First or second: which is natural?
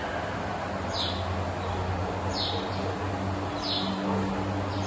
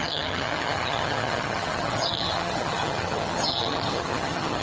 first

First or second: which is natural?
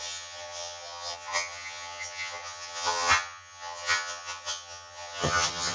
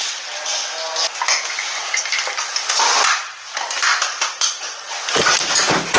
second